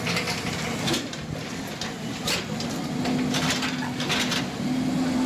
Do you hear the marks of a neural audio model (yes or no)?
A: no